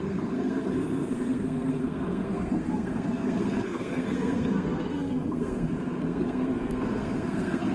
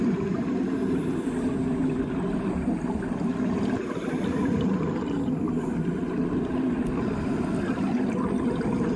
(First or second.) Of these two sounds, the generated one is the first